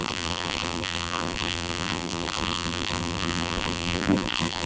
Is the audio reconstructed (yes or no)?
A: yes